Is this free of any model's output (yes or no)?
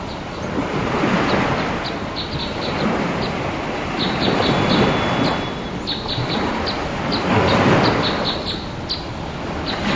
yes